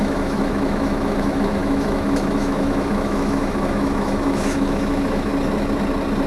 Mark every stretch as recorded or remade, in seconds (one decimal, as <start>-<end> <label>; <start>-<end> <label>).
0.0-5.3 remade; 5.3-6.3 recorded